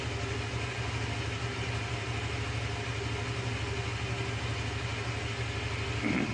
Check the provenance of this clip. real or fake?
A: real